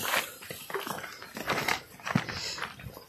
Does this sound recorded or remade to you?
recorded